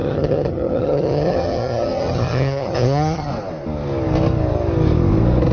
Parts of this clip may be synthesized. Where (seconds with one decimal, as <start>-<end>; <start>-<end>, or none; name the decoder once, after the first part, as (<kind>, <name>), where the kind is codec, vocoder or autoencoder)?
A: 0.0-3.3 (vocoder, HiFi-GAN)